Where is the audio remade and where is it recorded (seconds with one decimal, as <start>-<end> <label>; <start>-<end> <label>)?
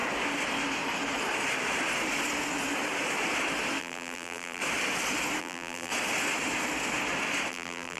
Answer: 0.0-3.8 recorded; 3.8-4.6 remade; 4.6-5.4 recorded; 5.4-5.9 remade; 5.9-7.5 recorded; 7.5-8.0 remade